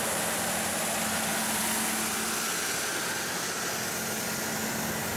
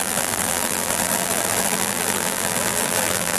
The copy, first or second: second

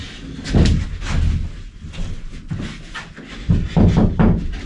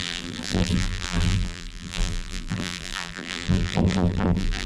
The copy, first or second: second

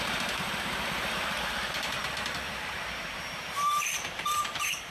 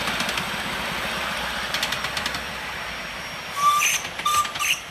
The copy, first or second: first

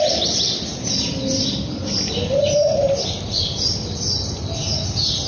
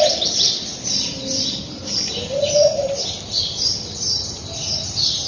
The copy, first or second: second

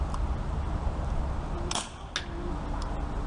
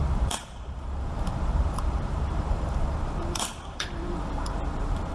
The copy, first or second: second